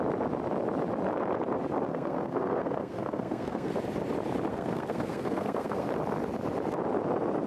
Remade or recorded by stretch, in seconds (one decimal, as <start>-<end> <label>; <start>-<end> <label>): 0.0-1.9 recorded; 1.9-3.7 remade; 3.7-4.5 recorded; 4.5-5.9 remade; 5.9-7.5 recorded